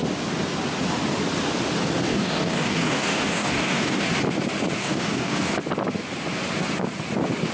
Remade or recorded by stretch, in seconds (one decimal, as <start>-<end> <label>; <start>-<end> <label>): 0.0-2.1 recorded; 2.1-4.0 remade; 4.0-4.8 recorded; 4.8-5.5 remade; 5.5-7.5 recorded